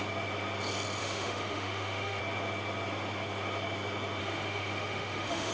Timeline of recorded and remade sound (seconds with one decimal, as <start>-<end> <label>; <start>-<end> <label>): 0.0-1.0 recorded; 1.0-2.2 remade; 2.2-4.2 recorded; 4.2-5.5 remade